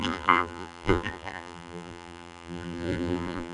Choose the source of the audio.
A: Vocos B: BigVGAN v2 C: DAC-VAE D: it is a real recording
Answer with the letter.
B